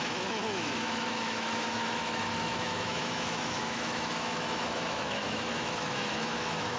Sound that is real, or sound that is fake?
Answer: fake